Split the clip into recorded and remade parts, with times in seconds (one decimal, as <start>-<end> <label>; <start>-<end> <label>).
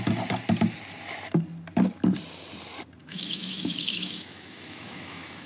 0.0-3.0 recorded; 3.0-5.5 remade